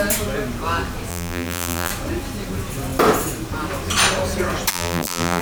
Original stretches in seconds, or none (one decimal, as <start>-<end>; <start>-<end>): 0.0-1.1; 1.9-4.7